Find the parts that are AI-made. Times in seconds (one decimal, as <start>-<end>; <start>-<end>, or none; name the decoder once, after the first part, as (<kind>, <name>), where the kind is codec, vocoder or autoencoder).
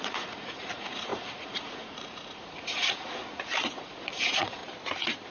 0.0-4.6 (vocoder, Vocos)